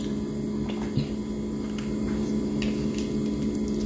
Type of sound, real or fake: real